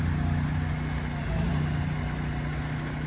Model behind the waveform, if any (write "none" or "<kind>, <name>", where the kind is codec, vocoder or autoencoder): none